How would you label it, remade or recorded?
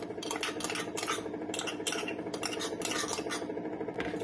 recorded